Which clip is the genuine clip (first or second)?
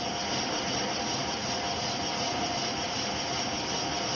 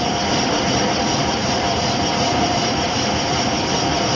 first